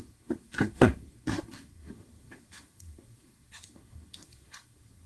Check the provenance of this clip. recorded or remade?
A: remade